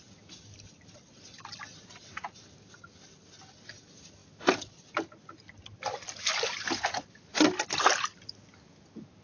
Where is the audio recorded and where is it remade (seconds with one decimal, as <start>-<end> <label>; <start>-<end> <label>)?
0.0-4.2 recorded; 4.2-7.0 remade; 7.0-9.2 recorded